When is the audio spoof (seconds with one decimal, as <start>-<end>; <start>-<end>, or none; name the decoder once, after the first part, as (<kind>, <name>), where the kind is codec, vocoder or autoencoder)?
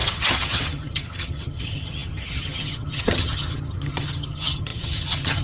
0.0-5.4 (vocoder, HiFi-GAN)